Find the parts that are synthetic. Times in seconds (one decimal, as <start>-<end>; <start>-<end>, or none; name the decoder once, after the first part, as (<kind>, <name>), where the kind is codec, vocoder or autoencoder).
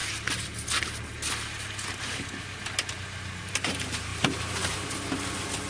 3.4-5.7 (vocoder, BigVGAN v2)